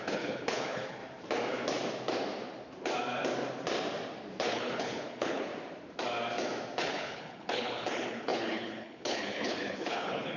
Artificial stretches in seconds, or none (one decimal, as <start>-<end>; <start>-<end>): 0.0-1.0; 4.4-5.5; 6.8-10.4